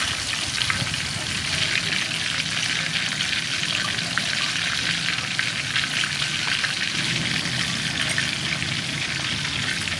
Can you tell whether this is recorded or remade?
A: recorded